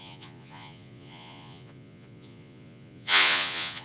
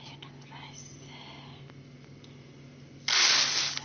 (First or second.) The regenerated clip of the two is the first